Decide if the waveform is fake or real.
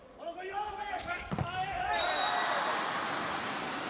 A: real